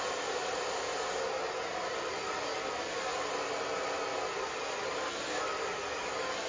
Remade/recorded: recorded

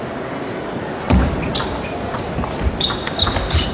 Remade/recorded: recorded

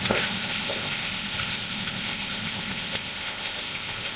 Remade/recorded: remade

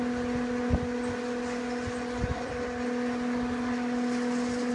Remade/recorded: recorded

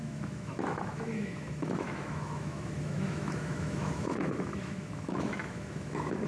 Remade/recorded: remade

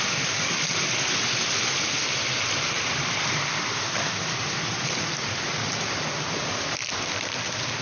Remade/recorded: recorded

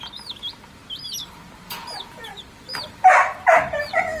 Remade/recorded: remade